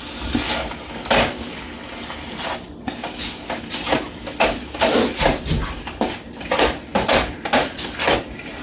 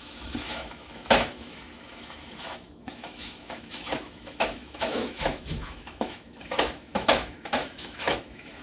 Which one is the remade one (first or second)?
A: second